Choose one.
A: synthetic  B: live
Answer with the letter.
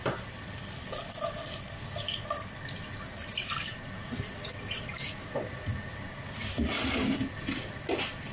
B